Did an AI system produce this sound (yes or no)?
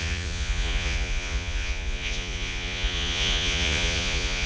yes